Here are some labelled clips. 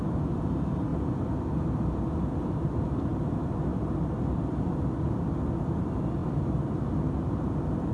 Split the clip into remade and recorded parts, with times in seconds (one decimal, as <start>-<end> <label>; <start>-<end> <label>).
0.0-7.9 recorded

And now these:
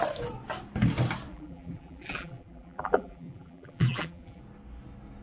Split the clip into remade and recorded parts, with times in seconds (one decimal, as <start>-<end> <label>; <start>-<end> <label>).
0.0-1.3 recorded; 1.3-4.4 remade; 4.4-5.2 recorded

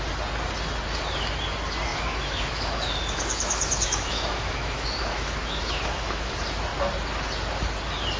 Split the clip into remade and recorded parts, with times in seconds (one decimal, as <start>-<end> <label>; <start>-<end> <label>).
0.0-1.9 recorded; 1.9-6.3 remade; 6.3-8.2 recorded